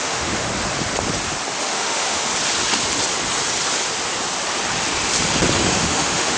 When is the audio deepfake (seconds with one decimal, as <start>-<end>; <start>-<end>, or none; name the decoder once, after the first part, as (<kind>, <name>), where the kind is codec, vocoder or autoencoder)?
0.0-0.5 (autoencoder, DAC-VAE); 1.6-2.3; 5.6-6.4